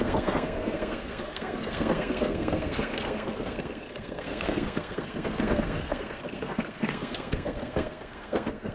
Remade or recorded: remade